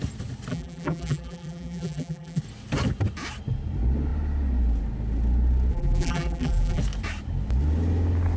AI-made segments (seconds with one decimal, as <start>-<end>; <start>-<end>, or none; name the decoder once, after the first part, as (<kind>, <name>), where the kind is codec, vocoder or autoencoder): 0.5-2.4 (vocoder, BigVGAN v2); 5.7-6.8